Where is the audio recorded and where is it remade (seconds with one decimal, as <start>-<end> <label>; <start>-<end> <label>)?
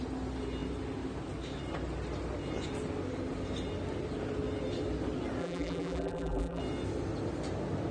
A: 0.0-5.4 recorded; 5.4-6.6 remade; 6.6-7.9 recorded